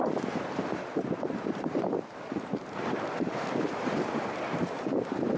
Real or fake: fake